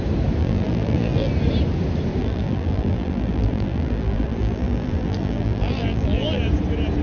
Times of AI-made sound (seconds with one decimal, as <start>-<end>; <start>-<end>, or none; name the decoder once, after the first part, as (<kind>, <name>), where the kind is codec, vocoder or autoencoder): 0.4-1.3 (vocoder, BigVGAN v2); 2.2-6.4